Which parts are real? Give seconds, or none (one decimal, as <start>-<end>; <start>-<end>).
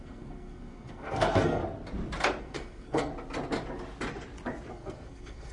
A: 1.6-2.4; 3.1-4.7